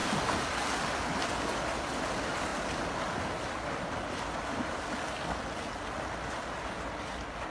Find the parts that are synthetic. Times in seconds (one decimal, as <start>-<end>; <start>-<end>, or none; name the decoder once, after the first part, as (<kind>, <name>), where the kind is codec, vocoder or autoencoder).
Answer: none